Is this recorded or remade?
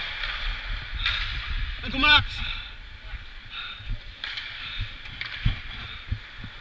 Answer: remade